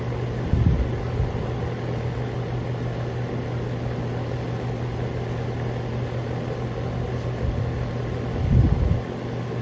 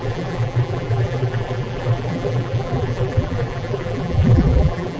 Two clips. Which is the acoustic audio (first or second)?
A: first